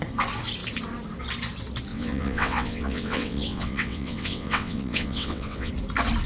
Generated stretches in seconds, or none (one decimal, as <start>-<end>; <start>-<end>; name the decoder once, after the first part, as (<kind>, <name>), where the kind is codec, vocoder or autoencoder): 1.9-5.7 (vocoder, WaveNeXt)